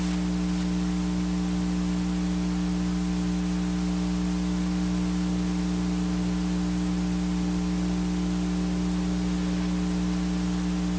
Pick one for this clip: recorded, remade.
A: recorded